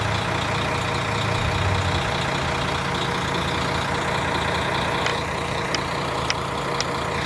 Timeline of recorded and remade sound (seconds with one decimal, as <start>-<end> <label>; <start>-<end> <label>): 0.0-5.1 recorded; 5.1-6.6 remade; 6.6-7.3 recorded